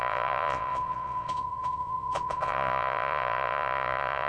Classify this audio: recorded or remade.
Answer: remade